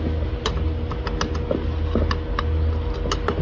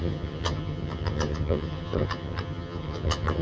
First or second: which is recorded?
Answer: first